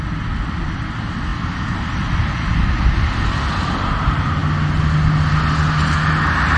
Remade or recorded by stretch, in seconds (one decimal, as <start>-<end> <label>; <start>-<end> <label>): 0.0-6.6 recorded